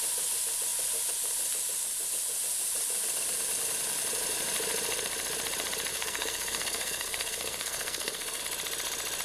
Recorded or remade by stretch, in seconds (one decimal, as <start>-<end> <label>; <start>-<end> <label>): 0.0-5.9 recorded; 5.9-8.4 remade; 8.4-9.2 recorded